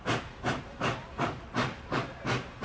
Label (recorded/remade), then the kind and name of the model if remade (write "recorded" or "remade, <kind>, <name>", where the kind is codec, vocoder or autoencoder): recorded